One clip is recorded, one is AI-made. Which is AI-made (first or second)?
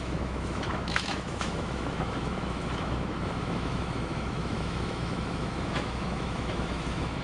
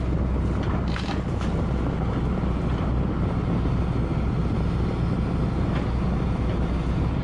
first